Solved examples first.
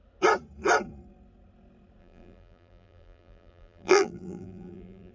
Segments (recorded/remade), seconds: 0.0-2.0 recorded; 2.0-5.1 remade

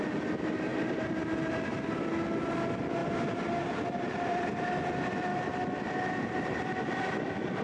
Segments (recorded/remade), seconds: 0.0-3.0 recorded; 3.0-4.8 remade; 4.8-7.6 recorded

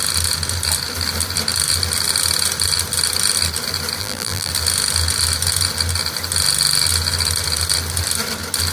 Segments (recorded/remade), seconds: 0.0-4.0 recorded; 4.0-4.5 remade; 4.5-8.7 recorded

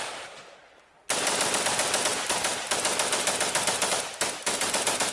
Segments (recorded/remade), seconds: 0.0-0.6 remade; 0.6-2.1 recorded; 2.1-2.5 remade; 2.5-3.9 recorded; 3.9-5.1 remade

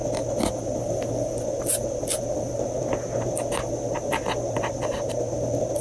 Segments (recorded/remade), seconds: 0.0-5.8 recorded

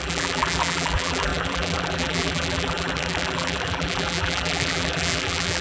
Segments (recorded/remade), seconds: 0.0-5.6 remade

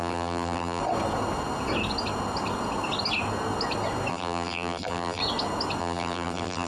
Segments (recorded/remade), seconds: 0.0-0.8 remade; 0.8-4.1 recorded; 4.1-5.2 remade; 5.2-5.8 recorded; 5.8-6.7 remade

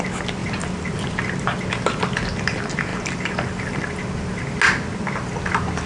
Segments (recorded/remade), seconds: 0.0-0.4 recorded; 0.4-1.3 remade; 1.3-2.9 recorded; 2.9-4.6 remade; 4.6-5.9 recorded